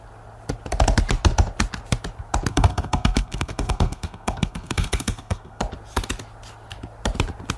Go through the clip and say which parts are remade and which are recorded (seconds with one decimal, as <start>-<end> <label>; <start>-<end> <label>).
0.0-2.5 recorded; 2.5-5.6 remade; 5.6-7.6 recorded